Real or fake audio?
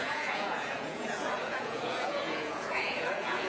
fake